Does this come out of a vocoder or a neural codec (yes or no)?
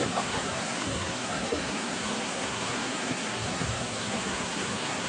yes